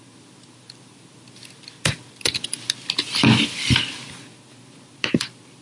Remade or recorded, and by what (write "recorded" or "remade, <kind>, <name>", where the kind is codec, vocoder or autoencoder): recorded